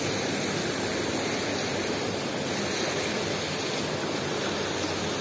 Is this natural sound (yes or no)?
yes